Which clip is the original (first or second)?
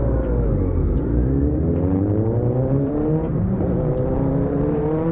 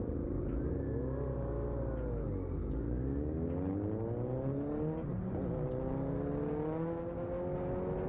second